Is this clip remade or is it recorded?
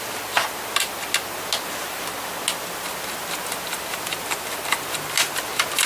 recorded